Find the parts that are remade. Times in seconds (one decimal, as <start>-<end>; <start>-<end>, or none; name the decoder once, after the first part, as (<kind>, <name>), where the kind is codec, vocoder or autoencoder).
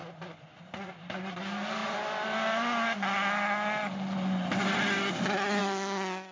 none